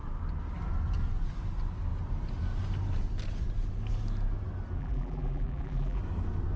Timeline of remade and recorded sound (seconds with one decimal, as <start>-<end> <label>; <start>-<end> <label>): 0.0-4.8 recorded; 4.8-6.0 remade; 6.0-6.6 recorded